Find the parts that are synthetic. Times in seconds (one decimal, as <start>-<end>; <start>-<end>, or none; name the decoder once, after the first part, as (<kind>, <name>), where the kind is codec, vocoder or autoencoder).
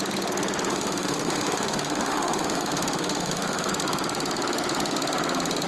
0.7-3.7 (autoencoder, DAC-VAE)